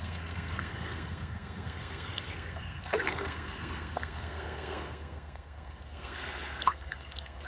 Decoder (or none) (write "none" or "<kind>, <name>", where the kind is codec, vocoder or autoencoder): codec, SNAC